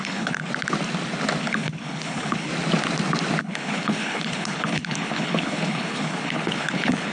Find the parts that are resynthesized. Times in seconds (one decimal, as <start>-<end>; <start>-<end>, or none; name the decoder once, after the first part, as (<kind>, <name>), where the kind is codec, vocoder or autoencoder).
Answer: 0.0-0.5 (codec, HILCodec); 1.4-2.5; 3.4-7.1